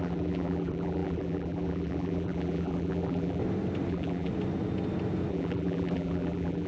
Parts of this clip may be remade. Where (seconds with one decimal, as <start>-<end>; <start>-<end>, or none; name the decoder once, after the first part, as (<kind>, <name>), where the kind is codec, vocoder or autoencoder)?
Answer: 0.0-3.4 (vocoder, BigVGAN v2); 3.9-4.3; 5.3-6.7